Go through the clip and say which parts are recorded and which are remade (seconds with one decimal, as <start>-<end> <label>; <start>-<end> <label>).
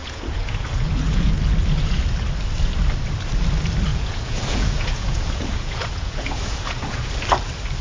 0.0-1.3 remade; 1.3-3.9 recorded; 3.9-7.1 remade; 7.1-7.8 recorded